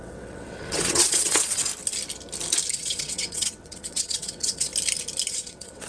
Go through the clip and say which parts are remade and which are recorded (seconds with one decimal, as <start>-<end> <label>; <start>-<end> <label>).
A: 0.0-1.7 remade; 1.7-2.7 recorded; 2.7-4.7 remade; 4.7-5.3 recorded; 5.3-5.9 remade